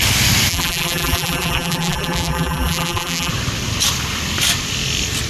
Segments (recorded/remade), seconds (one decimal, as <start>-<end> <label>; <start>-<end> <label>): 0.0-0.5 recorded; 0.5-3.3 remade; 3.3-5.3 recorded